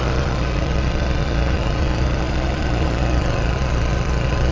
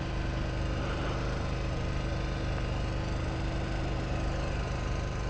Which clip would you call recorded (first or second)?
second